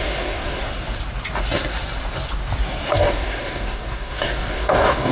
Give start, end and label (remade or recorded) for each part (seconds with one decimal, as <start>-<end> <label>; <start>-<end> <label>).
0.0-0.6 remade; 0.6-2.9 recorded; 2.9-5.1 remade